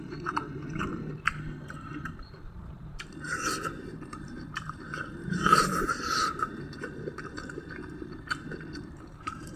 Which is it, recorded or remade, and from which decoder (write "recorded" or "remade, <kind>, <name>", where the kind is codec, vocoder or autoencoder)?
remade, vocoder, BigVGAN v2